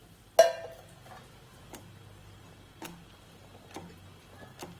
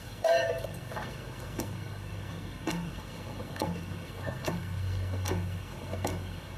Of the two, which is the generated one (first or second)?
second